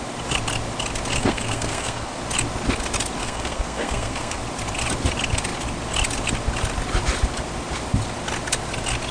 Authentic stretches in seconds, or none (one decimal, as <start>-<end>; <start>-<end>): 0.0-1.2; 2.2-3.2; 4.4-9.1